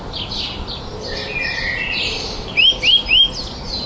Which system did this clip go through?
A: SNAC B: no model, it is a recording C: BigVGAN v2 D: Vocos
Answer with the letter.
B